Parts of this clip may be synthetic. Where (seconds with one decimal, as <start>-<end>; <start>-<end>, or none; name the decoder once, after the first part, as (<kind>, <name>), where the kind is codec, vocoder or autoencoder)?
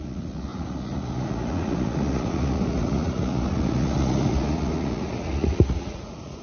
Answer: 0.0-6.4 (vocoder, Vocos)